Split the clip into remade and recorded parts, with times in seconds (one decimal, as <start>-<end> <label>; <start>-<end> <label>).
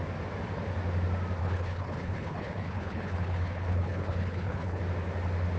0.0-1.4 recorded; 1.4-4.8 remade; 4.8-5.6 recorded